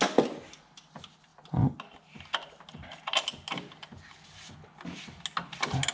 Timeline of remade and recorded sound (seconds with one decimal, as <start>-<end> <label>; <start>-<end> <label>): 0.0-5.9 recorded